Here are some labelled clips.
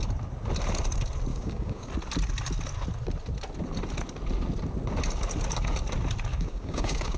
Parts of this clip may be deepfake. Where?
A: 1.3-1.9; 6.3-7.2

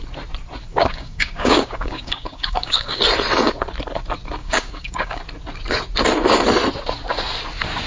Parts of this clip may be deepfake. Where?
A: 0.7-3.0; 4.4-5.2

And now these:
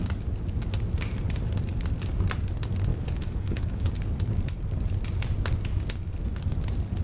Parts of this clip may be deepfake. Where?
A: 2.9-3.9

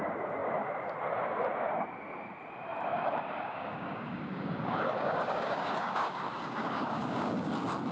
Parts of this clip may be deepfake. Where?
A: 2.9-7.5

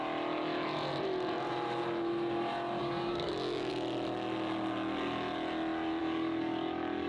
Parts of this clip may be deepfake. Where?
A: 2.8-3.7; 6.0-7.1

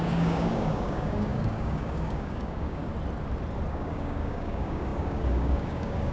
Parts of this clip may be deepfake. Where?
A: 0.0-2.9; 3.7-6.1

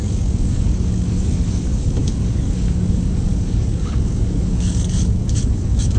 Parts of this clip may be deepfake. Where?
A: 0.0-6.0